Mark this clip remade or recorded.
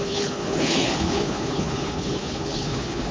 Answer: remade